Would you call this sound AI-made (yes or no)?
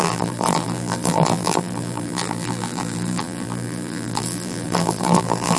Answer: yes